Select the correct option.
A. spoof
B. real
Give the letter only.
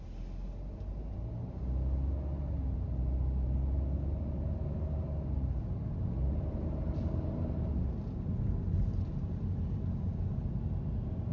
B